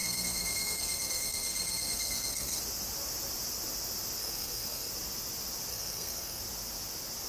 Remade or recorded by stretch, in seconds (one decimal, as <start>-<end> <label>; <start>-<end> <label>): 0.0-2.6 remade; 2.6-4.2 recorded; 4.2-4.9 remade; 4.9-5.7 recorded; 5.7-6.4 remade; 6.4-7.3 recorded

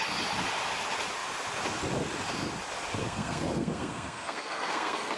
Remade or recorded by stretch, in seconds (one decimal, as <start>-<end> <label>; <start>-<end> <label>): 0.0-3.0 recorded; 3.0-5.2 remade

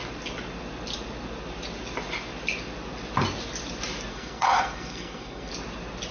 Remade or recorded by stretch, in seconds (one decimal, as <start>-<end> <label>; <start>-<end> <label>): 0.0-4.1 recorded; 4.1-5.5 remade; 5.5-6.1 recorded

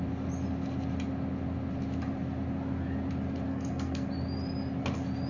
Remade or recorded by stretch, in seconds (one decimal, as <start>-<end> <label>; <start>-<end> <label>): 0.0-3.5 recorded; 3.5-4.1 remade; 4.1-5.3 recorded

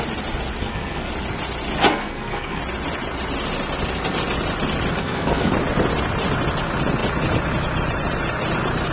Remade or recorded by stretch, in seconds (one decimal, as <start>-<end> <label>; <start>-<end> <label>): 0.0-0.6 recorded; 0.6-1.1 remade; 1.1-1.9 recorded; 1.9-2.6 remade; 2.6-5.0 recorded; 5.0-5.5 remade; 5.5-8.9 recorded

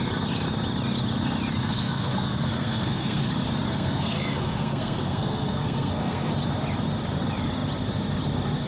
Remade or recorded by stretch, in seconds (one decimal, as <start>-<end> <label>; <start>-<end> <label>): 0.0-1.6 recorded; 1.6-3.3 remade; 3.3-3.7 recorded; 3.7-6.3 remade; 6.3-8.7 recorded

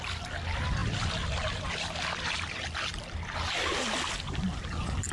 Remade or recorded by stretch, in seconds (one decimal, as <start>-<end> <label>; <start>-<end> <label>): 0.0-5.1 recorded

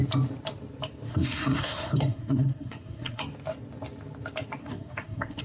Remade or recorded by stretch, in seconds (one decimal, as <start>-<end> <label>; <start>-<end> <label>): 0.0-1.1 recorded; 1.1-3.2 remade; 3.2-4.6 recorded; 4.6-5.4 remade